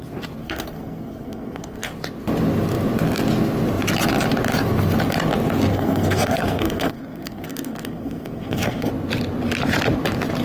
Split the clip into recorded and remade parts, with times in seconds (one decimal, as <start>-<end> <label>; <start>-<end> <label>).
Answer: 0.0-0.4 recorded; 0.4-1.9 remade; 1.9-5.7 recorded; 5.7-8.9 remade; 8.9-10.4 recorded

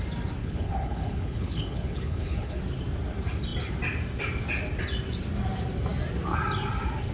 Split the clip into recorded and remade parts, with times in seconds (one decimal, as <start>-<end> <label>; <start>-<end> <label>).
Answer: 0.0-0.4 recorded; 0.4-2.6 remade; 2.6-7.1 recorded